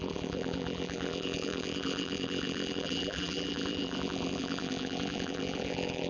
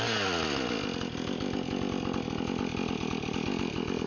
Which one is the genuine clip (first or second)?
second